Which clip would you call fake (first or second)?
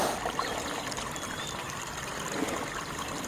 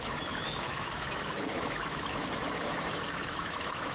second